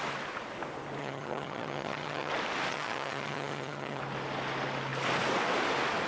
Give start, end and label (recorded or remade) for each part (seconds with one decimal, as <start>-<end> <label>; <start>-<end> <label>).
0.0-1.0 recorded; 1.0-2.3 remade; 2.3-2.7 recorded; 2.7-4.0 remade; 4.0-6.1 recorded